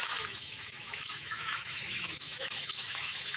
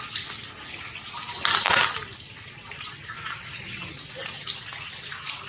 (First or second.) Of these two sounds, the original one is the second